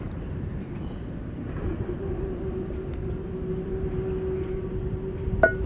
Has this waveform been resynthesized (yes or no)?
no